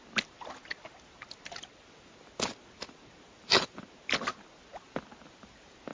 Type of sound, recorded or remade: recorded